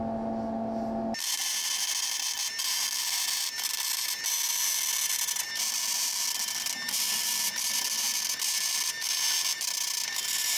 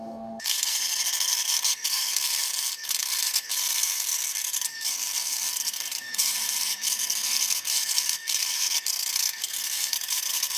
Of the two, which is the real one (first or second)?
first